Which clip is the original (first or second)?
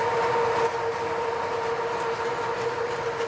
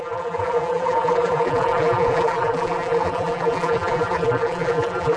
first